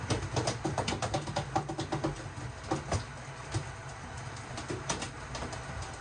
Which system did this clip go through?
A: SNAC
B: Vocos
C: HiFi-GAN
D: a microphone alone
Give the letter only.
D